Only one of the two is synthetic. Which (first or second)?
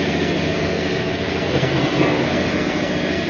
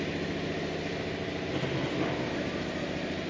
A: first